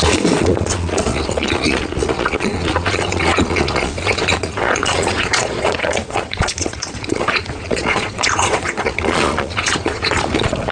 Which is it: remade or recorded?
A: remade